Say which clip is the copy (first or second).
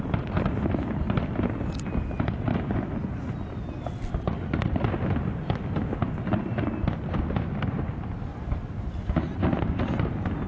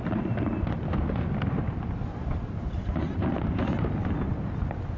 second